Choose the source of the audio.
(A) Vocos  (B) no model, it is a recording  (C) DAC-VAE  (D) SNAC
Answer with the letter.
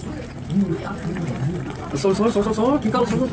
B